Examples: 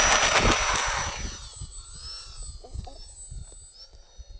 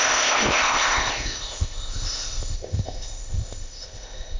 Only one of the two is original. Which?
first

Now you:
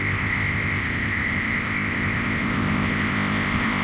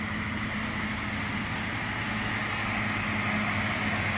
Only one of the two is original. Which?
second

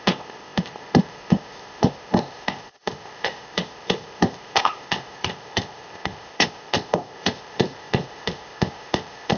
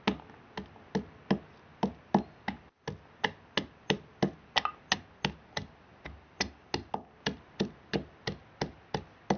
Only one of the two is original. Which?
second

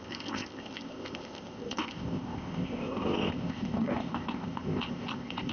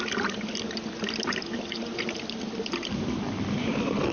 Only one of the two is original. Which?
second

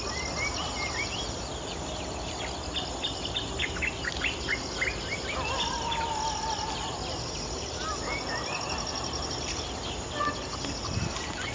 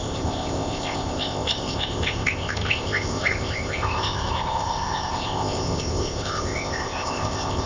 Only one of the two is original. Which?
first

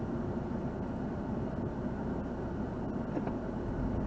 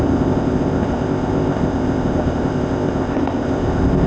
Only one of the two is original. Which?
first